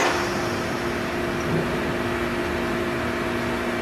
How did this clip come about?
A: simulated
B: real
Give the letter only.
B